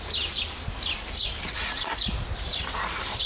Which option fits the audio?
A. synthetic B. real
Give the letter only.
B